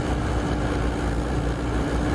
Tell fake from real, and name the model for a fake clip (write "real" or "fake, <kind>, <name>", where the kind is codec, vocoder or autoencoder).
real